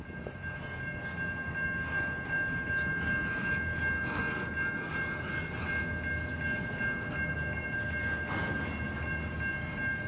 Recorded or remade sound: recorded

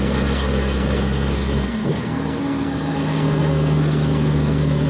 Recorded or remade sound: remade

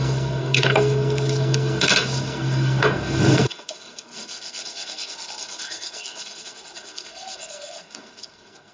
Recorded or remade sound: remade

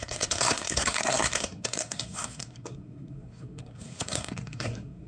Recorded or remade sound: remade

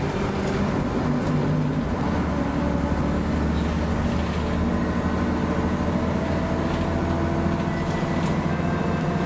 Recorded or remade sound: recorded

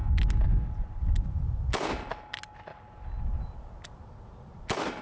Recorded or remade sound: recorded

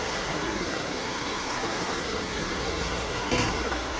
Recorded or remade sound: remade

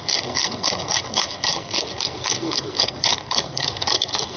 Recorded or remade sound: remade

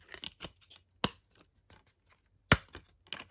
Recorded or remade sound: recorded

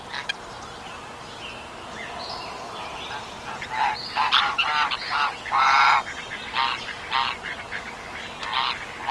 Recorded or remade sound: recorded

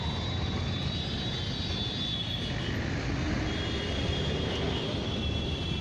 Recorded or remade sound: recorded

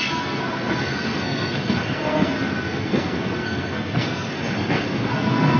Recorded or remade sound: remade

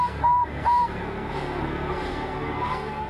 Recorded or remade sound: remade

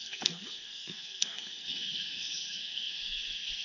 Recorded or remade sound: remade